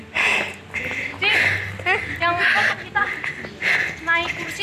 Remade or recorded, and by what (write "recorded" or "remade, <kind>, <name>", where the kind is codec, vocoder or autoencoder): recorded